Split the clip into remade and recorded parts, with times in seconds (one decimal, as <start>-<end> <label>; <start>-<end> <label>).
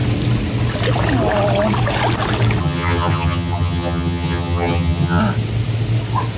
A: 0.0-2.6 recorded; 2.6-5.2 remade; 5.2-6.4 recorded